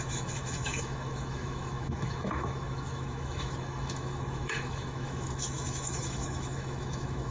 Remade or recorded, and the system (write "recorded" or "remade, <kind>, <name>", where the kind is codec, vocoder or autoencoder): remade, autoencoder, DAC-VAE